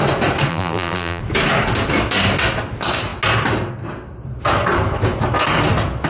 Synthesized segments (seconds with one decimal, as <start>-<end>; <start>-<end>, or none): 0.5-1.2